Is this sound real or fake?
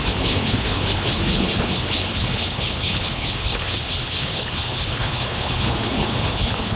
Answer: fake